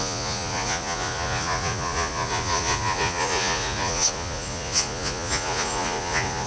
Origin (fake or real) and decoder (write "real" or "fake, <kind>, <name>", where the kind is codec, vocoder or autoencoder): fake, vocoder, Vocos